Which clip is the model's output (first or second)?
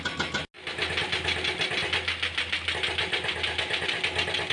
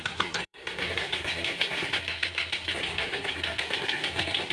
second